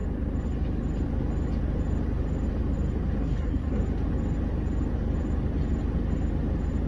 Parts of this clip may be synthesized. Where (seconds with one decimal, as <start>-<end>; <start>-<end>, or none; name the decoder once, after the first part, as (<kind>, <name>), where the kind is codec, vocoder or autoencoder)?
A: 3.2-3.8 (codec, SNAC)

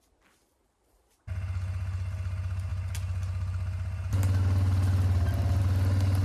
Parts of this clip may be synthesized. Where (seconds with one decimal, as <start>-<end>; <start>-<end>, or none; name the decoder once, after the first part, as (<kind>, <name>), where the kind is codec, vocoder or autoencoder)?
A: none

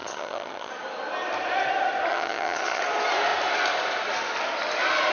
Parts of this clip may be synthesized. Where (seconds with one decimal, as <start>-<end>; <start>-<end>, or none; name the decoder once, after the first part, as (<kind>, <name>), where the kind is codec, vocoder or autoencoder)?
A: 0.0-0.7 (vocoder, HiFi-GAN); 2.1-2.8

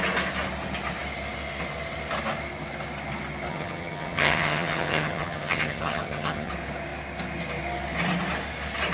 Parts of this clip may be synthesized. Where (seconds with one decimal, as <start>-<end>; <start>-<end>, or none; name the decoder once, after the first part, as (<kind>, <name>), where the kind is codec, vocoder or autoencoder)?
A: 3.5-6.5 (vocoder, HiFi-GAN)

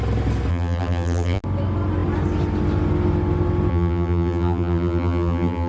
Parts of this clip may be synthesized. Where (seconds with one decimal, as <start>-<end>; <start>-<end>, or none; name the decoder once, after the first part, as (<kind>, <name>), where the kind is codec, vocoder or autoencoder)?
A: 0.5-1.4 (vocoder, BigVGAN v2); 3.7-5.7

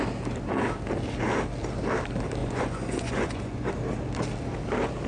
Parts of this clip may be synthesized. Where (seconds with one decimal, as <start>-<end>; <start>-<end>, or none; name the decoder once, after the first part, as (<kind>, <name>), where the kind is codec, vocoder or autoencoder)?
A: 2.4-3.7 (vocoder, Vocos)

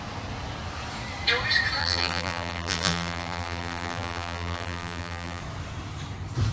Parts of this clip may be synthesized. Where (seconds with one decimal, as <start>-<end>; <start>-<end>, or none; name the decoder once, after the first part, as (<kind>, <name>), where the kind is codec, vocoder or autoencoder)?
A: 1.8-5.4 (vocoder, BigVGAN v2)

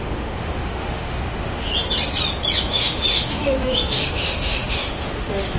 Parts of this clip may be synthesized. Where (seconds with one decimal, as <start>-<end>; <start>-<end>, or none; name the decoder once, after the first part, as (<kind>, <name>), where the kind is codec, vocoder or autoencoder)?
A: 0.0-1.7 (autoencoder, DAC-VAE); 2.7-5.6